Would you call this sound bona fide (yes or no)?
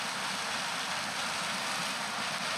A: yes